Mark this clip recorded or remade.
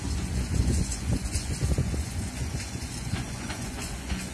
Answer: remade